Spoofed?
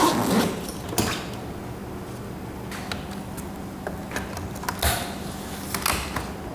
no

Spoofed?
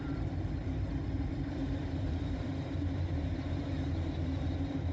yes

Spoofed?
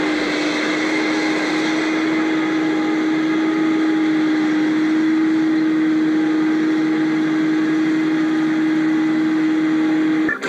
no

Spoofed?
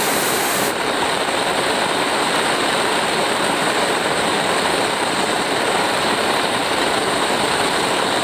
yes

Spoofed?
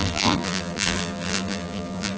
yes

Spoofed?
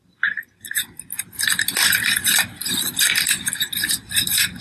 no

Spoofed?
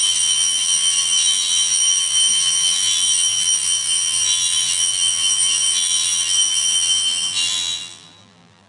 yes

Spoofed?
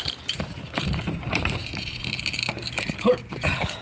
yes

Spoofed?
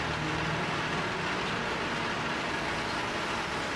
no